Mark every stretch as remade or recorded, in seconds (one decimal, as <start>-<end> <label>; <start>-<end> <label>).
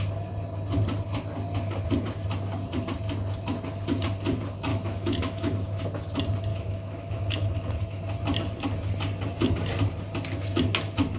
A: 0.0-4.7 recorded; 4.7-5.8 remade; 5.8-6.5 recorded; 6.5-8.0 remade; 8.0-11.2 recorded